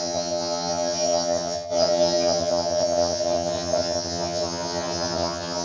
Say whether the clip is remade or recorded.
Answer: remade